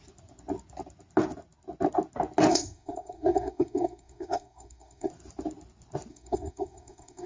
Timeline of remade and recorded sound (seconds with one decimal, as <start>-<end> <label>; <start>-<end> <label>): 0.0-2.5 recorded; 2.5-5.1 remade; 5.1-6.1 recorded; 6.1-7.3 remade